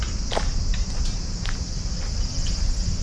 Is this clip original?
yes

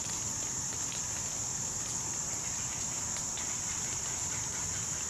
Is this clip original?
no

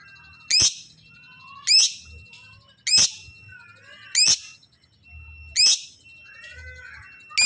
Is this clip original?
yes